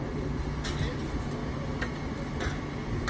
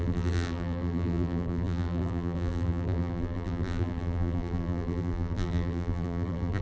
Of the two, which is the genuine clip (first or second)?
first